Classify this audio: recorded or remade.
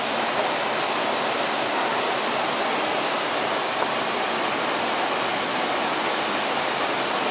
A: recorded